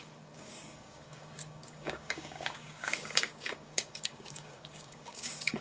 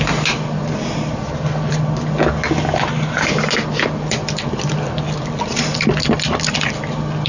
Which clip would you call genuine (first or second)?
second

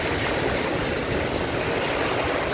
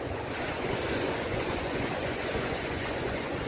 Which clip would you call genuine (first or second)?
first